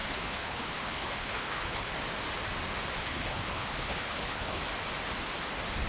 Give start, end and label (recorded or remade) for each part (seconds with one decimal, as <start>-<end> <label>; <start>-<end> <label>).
0.0-1.9 remade; 1.9-3.0 recorded; 3.0-4.6 remade; 4.6-5.9 recorded